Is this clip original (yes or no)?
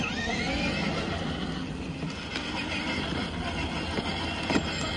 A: yes